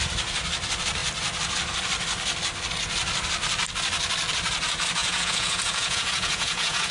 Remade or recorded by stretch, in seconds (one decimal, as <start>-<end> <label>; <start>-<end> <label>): 0.0-5.0 recorded; 5.0-6.9 remade